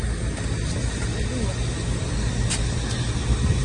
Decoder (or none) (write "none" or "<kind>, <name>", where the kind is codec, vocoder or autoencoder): none